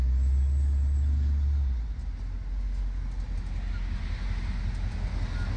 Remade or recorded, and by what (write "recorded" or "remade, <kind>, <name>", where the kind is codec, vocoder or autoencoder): recorded